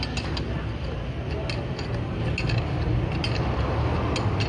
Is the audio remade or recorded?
recorded